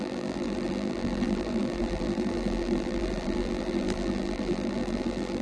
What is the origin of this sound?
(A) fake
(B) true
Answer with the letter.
A